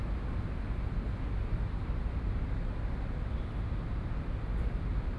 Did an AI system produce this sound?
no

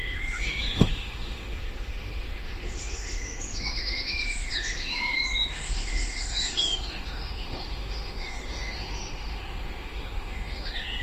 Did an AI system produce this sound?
yes